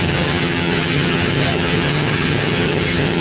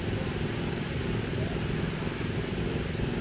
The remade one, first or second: first